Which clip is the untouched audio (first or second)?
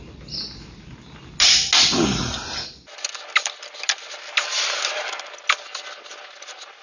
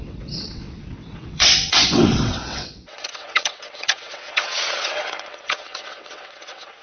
first